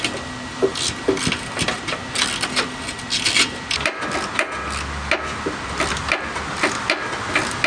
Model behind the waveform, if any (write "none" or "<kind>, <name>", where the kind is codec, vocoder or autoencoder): none